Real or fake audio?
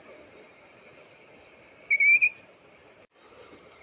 real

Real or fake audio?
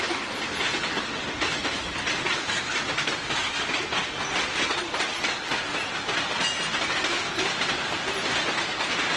real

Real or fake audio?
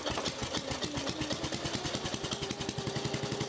real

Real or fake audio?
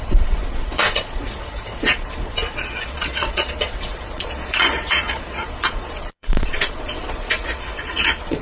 fake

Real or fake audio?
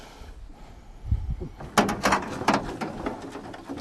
real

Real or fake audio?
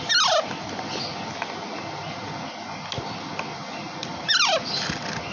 real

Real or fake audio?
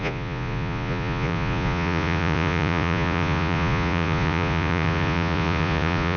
fake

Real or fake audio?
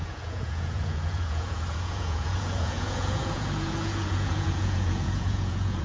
fake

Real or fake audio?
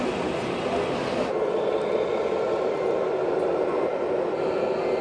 real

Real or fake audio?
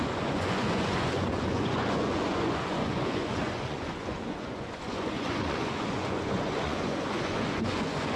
fake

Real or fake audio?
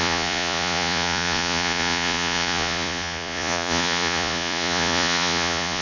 fake